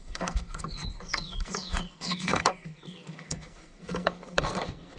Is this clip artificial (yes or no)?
yes